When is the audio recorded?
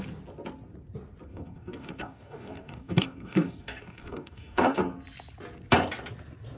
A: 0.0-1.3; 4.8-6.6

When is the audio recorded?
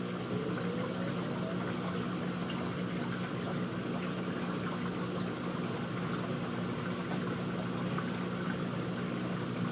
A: 0.0-9.7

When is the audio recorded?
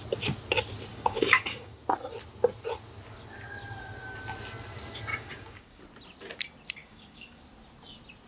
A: 0.0-0.9; 1.8-5.1; 5.8-6.8; 7.4-8.3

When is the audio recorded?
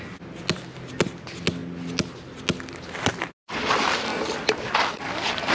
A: 0.0-5.5